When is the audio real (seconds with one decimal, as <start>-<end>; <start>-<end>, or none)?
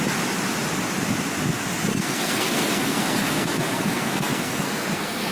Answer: 0.0-1.9